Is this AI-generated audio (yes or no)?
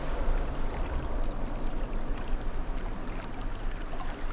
no